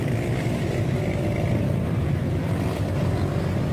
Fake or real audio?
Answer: real